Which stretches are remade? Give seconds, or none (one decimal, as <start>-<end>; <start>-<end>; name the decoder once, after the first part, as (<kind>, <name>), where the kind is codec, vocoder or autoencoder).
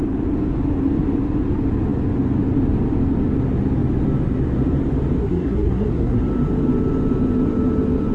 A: 5.2-6.2 (codec, SNAC)